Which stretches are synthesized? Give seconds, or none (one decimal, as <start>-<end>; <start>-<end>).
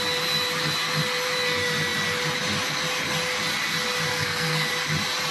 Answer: 4.1-4.7